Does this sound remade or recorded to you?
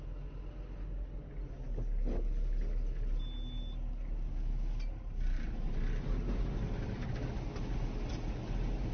recorded